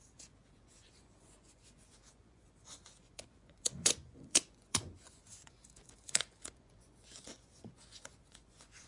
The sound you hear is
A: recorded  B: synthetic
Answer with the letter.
B